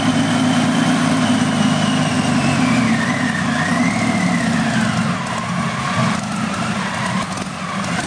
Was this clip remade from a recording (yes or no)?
no